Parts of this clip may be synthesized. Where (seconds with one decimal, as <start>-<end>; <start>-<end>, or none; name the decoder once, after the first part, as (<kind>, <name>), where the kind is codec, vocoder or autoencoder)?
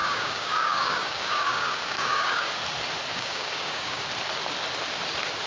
0.0-2.5 (codec, DAC); 3.1-4.0